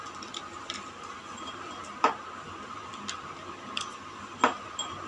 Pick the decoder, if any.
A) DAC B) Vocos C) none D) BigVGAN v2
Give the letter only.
C